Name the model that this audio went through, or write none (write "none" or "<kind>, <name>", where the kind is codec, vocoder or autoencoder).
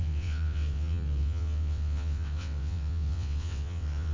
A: vocoder, WaveNeXt